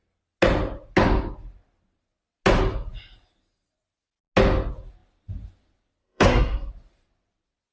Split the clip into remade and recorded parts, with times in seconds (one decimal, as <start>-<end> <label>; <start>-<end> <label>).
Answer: 0.0-6.0 recorded; 6.0-6.7 remade; 6.7-7.7 recorded